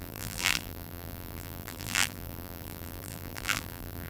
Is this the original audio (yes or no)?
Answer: no